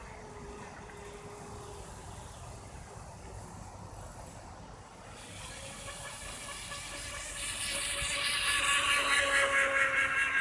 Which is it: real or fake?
real